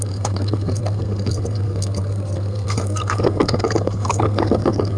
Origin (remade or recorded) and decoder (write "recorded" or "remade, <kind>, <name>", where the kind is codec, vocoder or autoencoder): remade, codec, SNAC